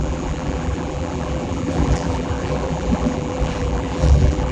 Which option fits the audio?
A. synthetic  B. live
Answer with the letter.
A